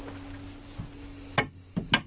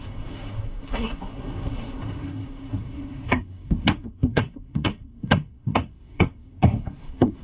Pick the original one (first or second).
first